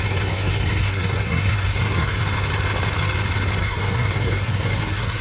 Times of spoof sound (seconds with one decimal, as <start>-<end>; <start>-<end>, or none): 0.0-2.2; 3.6-5.2